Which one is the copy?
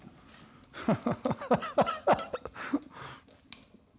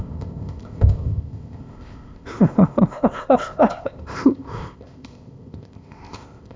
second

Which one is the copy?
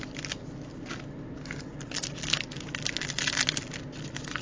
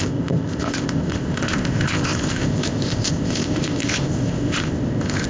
second